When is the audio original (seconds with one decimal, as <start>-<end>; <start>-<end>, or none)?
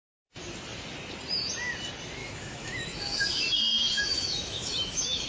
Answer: 0.0-2.2